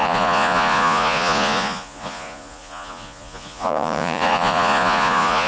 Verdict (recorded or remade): remade